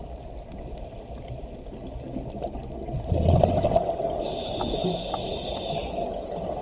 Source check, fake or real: real